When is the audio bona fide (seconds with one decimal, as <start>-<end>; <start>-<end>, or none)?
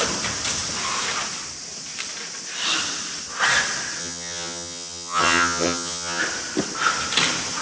0.0-4.0; 6.2-7.6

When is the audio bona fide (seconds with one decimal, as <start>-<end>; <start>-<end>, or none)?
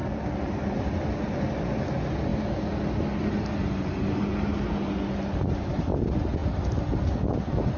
0.0-7.8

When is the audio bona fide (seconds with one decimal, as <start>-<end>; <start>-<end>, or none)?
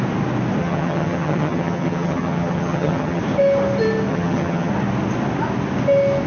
0.0-0.6; 3.2-4.1; 4.7-6.3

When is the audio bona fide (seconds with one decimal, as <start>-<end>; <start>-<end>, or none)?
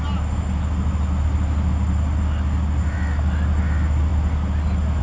0.0-5.0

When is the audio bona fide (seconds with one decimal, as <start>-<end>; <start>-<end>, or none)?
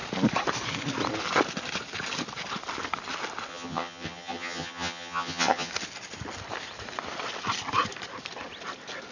0.0-3.5; 5.7-9.1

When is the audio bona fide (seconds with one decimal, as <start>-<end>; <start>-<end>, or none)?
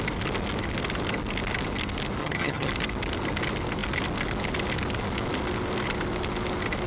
0.0-2.2; 2.7-6.9